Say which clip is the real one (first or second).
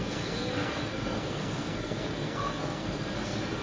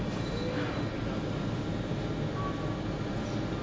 second